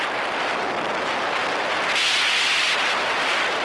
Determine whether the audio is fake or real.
real